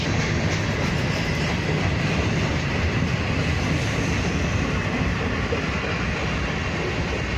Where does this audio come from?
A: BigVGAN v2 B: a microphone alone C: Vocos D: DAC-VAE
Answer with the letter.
B